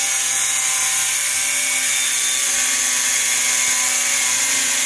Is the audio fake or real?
real